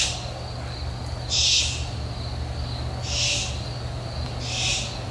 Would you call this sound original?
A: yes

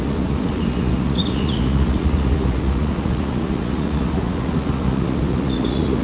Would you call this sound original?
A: no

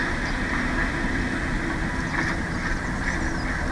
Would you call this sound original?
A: yes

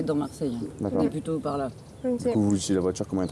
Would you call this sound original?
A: yes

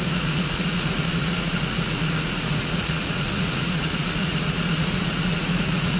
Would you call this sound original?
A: no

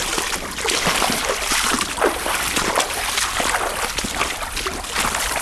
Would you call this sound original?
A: yes